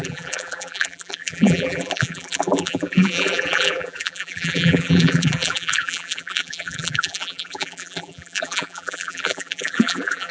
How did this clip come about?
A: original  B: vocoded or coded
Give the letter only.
B